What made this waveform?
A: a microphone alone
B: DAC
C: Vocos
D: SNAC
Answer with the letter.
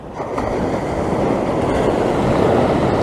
A